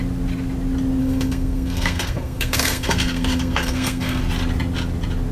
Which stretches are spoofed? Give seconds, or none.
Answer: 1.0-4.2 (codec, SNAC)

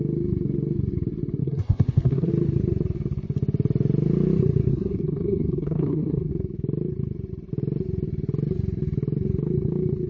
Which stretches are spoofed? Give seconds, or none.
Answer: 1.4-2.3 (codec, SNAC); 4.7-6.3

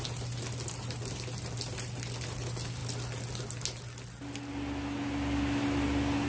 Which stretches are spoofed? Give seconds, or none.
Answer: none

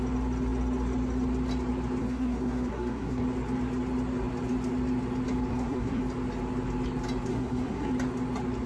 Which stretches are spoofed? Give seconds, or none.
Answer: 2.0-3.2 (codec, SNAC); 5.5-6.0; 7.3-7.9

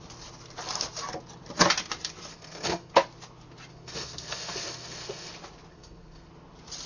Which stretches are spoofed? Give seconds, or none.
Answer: 2.3-2.9 (codec, SNAC); 3.7-5.3; 5.7-6.3